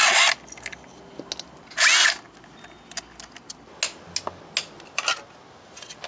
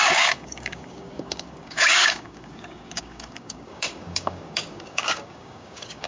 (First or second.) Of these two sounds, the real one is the first